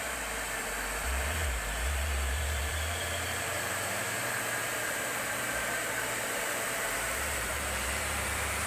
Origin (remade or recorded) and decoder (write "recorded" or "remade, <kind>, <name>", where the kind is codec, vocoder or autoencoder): remade, vocoder, BigVGAN v2